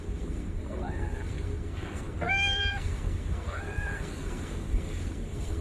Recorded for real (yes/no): no